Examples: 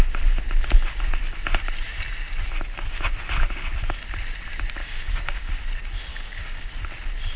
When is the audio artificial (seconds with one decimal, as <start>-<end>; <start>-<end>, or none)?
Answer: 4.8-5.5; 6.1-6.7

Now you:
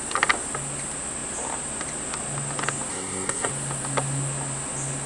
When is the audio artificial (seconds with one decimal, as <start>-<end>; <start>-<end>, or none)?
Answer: 2.9-3.5

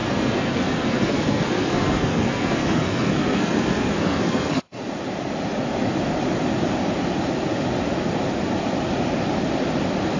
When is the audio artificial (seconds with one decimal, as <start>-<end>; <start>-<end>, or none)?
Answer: 0.0-4.8

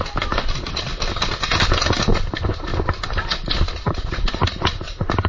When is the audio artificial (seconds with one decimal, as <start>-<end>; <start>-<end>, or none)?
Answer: 0.0-0.9; 1.7-2.7; 3.8-5.3

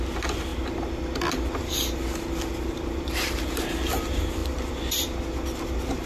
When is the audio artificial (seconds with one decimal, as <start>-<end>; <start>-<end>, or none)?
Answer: none